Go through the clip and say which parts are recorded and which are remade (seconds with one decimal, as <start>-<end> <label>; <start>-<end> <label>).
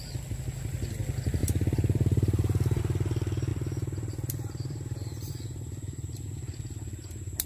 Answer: 0.0-1.4 recorded; 1.4-2.8 remade; 2.8-3.5 recorded; 3.5-5.3 remade; 5.3-7.5 recorded